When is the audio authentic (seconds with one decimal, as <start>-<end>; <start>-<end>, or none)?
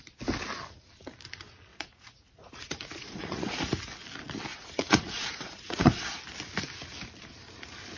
0.0-1.7; 3.6-4.5; 6.2-8.0